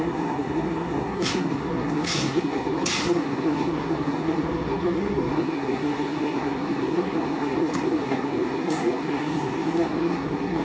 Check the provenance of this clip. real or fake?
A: fake